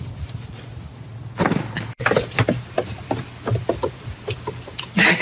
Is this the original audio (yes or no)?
no